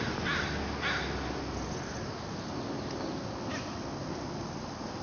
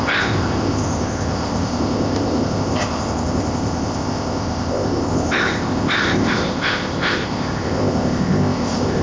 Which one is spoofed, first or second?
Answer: second